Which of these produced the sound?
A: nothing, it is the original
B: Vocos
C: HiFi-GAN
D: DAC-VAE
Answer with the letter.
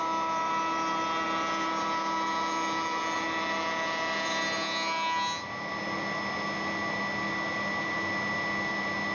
A